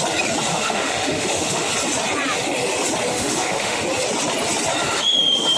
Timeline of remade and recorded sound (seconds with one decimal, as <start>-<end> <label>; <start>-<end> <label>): 0.0-0.5 recorded; 0.5-1.7 remade; 1.7-3.1 recorded; 3.1-3.8 remade; 3.8-5.6 recorded